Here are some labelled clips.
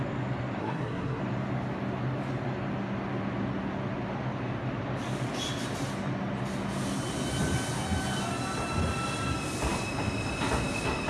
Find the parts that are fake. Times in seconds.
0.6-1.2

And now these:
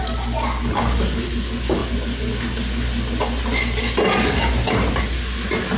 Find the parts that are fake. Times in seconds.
none

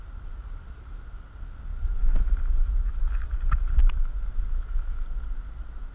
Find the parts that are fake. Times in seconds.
0.4-1.0; 1.7-2.7; 3.8-4.4

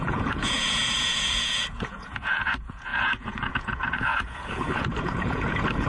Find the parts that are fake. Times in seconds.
0.0-5.9

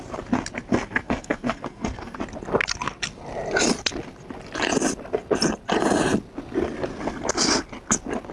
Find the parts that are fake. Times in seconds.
0.7-2.2